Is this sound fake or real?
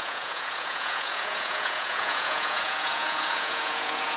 fake